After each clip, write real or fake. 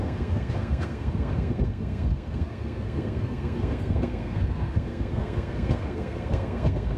fake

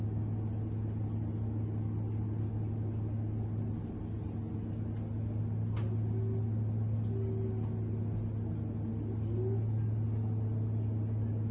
real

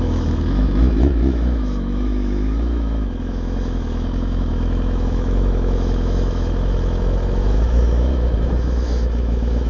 fake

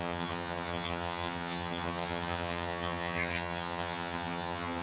fake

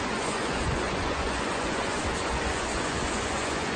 fake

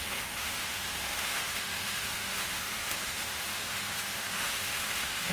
fake